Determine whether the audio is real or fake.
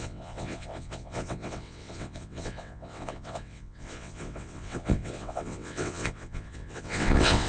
fake